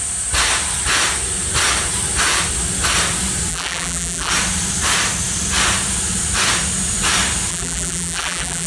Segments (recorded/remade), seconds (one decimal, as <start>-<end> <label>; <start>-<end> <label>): 0.0-3.5 recorded; 3.5-4.3 remade; 4.3-7.5 recorded; 7.5-8.7 remade